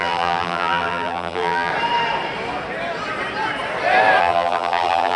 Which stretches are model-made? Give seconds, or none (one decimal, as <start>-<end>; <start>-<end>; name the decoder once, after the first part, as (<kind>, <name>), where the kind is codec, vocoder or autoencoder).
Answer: 0.0-1.7 (vocoder, BigVGAN v2); 4.2-5.2